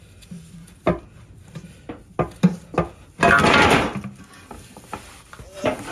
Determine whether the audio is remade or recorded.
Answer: recorded